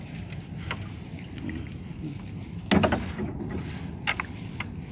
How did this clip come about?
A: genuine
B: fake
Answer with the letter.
A